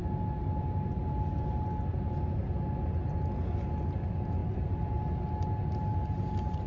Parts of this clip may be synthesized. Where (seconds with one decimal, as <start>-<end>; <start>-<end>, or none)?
4.4-5.0